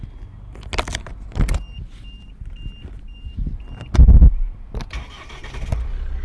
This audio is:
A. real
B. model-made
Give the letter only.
A